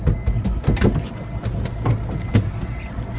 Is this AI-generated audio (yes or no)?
no